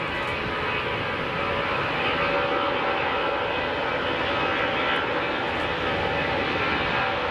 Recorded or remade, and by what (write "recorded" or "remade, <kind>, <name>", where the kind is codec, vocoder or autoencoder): recorded